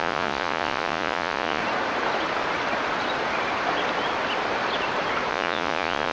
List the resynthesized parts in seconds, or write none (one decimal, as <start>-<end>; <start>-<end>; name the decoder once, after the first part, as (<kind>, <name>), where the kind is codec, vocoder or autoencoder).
0.0-1.6 (vocoder, Vocos); 5.3-6.1